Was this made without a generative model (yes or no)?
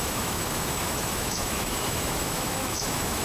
no